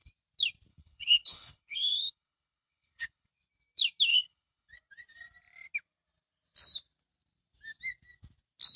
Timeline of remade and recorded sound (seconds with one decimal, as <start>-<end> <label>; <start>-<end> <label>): 0.0-0.7 recorded; 0.7-3.3 remade; 3.3-4.1 recorded; 4.1-4.7 remade; 4.7-8.8 recorded